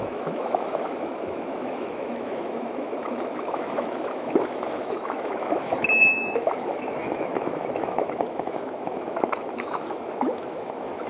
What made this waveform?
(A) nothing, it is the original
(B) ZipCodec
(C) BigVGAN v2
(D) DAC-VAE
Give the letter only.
D